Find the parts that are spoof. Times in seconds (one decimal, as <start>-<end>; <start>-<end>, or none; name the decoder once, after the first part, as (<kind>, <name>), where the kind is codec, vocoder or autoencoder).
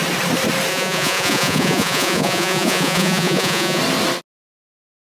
0.7-3.8 (vocoder, Vocos)